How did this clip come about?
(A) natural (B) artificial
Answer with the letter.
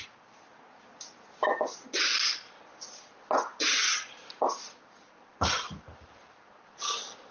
A